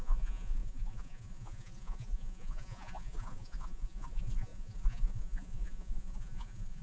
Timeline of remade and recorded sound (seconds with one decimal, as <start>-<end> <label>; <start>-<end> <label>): 0.0-6.8 remade